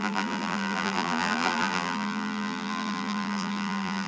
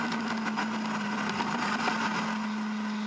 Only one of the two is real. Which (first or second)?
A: second